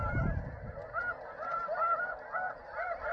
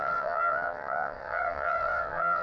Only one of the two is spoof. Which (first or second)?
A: second